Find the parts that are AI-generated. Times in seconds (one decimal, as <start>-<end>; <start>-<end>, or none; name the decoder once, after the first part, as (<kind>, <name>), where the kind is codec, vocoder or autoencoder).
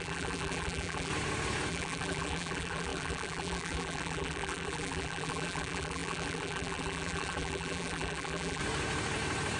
0.0-1.1 (vocoder, BigVGAN v2); 1.7-8.6